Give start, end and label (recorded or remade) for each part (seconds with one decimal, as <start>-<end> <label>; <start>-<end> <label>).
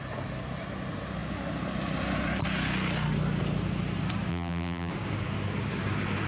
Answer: 0.0-4.3 recorded; 4.3-4.9 remade; 4.9-6.3 recorded